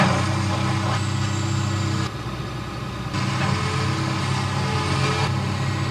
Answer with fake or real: real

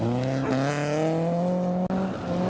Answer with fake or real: real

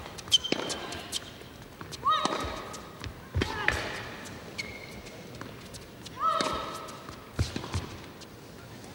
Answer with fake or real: real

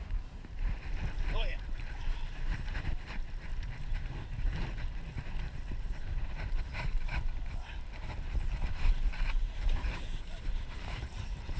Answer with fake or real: fake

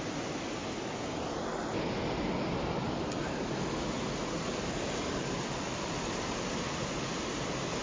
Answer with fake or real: real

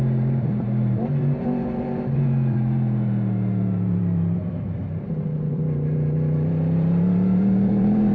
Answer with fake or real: fake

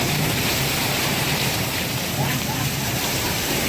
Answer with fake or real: fake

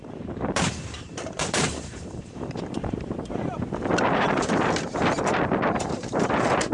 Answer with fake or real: fake